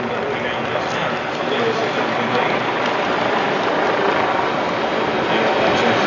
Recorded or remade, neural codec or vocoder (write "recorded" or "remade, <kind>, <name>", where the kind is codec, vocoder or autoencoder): recorded